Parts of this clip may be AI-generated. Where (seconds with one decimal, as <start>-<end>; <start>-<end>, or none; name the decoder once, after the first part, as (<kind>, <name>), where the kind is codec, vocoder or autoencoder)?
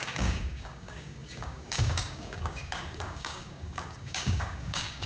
0.0-5.1 (codec, DAC)